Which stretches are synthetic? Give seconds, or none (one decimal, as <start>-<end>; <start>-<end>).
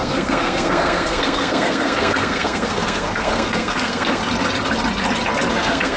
0.0-4.2; 5.5-6.0